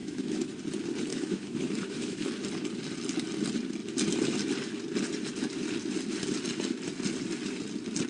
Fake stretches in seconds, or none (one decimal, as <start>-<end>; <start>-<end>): 0.0-0.5; 1.1-2.3